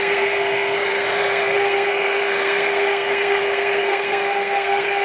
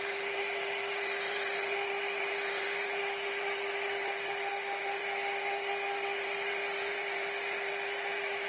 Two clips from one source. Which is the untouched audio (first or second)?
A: second